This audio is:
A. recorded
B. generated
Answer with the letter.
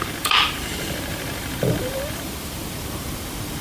B